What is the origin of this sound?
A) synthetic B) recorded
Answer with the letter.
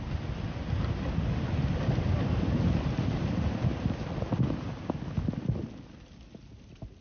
B